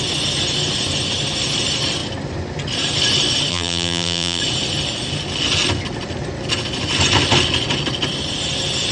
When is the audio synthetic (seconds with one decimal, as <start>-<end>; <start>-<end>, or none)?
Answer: 3.5-4.4